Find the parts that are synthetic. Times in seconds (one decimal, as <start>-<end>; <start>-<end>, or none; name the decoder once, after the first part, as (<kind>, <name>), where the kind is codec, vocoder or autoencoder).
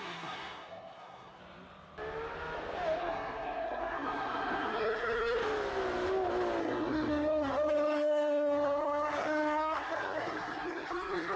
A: 0.0-1.4 (codec, SNAC); 3.0-5.4; 6.6-11.4